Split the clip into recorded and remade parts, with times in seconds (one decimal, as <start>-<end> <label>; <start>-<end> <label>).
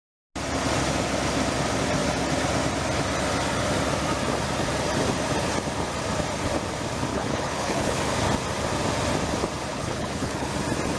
0.0-7.1 recorded; 7.1-8.0 remade; 8.0-9.7 recorded; 9.7-10.5 remade; 10.5-11.0 recorded